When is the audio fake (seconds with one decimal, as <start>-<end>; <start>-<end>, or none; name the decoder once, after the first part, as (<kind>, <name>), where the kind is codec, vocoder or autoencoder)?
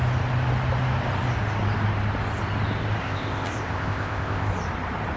3.0-4.5 (codec, ZipCodec)